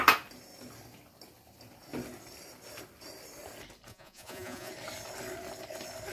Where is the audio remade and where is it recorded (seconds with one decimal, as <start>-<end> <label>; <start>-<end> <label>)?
0.0-3.9 recorded; 3.9-4.7 remade; 4.7-6.1 recorded